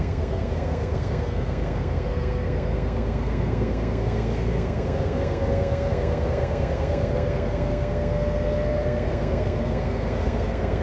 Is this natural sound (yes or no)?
no